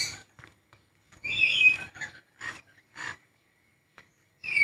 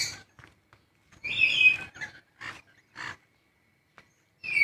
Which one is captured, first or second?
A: second